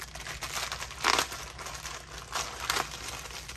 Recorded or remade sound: recorded